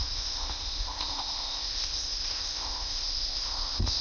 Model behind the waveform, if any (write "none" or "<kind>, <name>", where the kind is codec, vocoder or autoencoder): codec, ZipCodec